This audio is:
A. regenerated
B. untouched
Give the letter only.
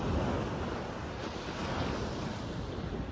B